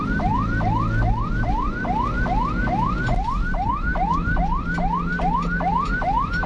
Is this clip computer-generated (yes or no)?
no